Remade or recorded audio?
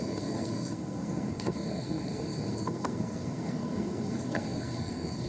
remade